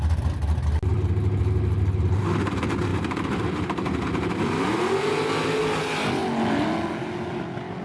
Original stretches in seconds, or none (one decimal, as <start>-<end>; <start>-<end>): 0.0-0.9; 1.4-2.9; 5.0-7.8